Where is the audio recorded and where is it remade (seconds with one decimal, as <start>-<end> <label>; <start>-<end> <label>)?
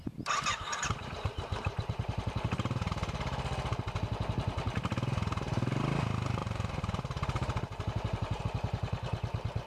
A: 0.0-0.5 recorded; 0.5-2.9 remade; 2.9-6.4 recorded; 6.4-8.4 remade; 8.4-9.7 recorded